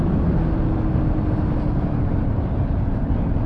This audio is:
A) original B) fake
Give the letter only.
A